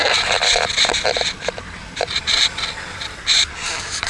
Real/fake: real